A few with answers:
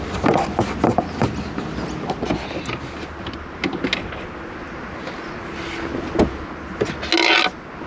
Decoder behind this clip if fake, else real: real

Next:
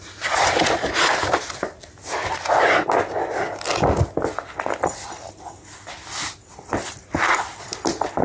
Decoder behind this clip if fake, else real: real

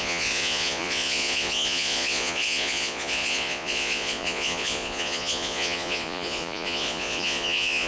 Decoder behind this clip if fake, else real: fake, vocoder, Vocos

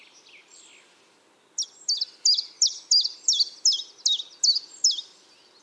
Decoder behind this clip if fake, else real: real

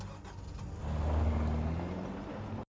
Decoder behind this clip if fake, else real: real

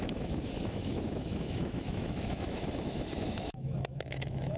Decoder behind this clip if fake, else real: fake, autoencoder, DAC-VAE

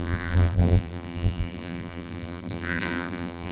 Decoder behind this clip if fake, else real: fake, vocoder, BigVGAN v2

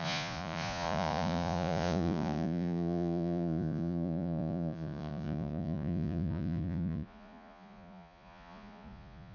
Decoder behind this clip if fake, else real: fake, vocoder, Vocos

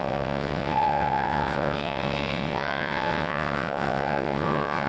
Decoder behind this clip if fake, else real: fake, vocoder, WaveNeXt